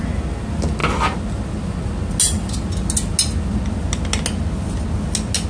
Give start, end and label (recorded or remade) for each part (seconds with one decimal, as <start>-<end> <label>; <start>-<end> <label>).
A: 0.0-5.5 recorded